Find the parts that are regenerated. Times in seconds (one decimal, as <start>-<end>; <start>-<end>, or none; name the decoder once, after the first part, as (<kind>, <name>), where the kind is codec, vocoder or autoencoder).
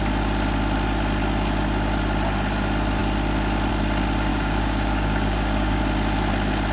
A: 4.3-5.8 (codec, DAC)